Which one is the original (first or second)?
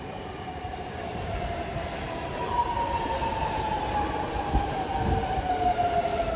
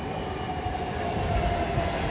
second